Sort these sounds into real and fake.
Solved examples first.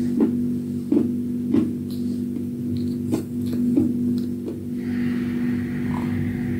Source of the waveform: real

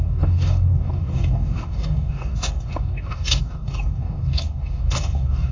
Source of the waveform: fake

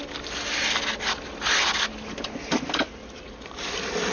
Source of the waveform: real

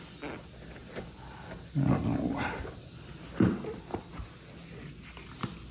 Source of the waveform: real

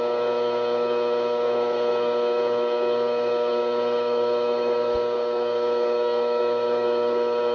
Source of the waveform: fake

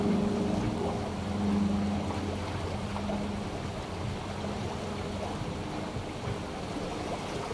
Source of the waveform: real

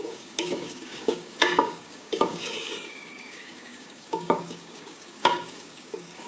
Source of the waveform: fake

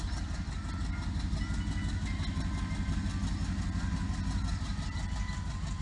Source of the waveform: real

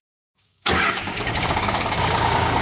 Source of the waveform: fake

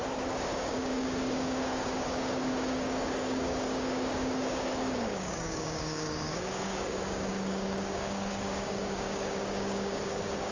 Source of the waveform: fake